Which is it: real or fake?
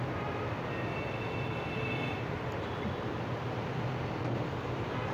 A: real